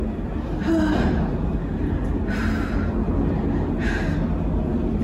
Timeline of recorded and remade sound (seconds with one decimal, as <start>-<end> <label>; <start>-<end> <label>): 0.0-5.0 recorded

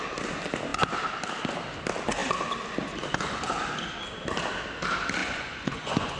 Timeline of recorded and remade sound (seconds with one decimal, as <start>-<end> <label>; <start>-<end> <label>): 0.0-3.1 recorded; 3.1-3.8 remade; 3.8-5.2 recorded; 5.2-6.2 remade

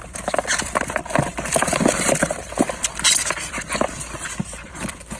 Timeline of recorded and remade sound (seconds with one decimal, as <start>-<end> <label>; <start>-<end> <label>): 0.0-5.2 recorded

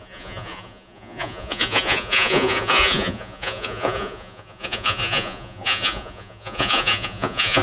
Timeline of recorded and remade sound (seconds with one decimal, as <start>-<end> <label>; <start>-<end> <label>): 0.0-7.6 remade